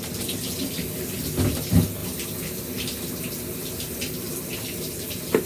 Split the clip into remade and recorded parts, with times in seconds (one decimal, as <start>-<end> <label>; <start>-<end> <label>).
0.0-5.5 recorded